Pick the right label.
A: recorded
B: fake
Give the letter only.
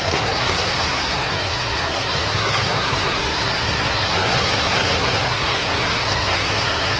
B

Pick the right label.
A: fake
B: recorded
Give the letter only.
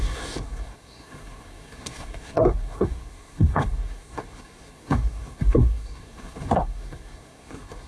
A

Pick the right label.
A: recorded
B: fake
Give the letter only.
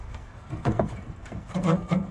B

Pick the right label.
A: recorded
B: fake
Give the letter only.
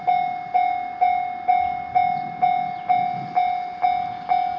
A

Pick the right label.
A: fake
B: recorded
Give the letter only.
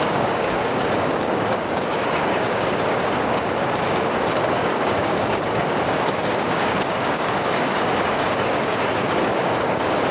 A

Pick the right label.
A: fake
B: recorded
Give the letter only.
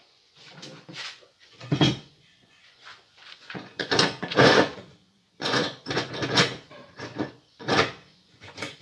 A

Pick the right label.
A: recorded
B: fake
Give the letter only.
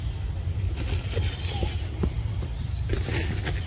A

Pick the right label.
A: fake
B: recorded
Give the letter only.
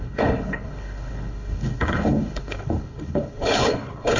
A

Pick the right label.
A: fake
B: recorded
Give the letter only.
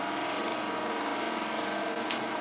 B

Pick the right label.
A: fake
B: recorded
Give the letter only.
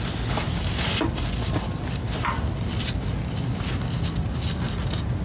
B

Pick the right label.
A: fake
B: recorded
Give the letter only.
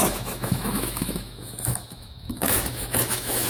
A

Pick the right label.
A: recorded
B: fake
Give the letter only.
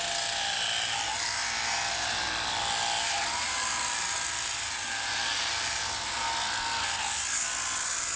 A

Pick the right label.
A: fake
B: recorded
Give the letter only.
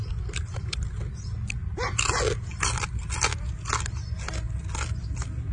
B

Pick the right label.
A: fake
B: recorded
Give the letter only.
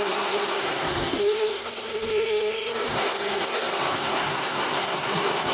A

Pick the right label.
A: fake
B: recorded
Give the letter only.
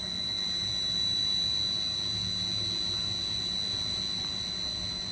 B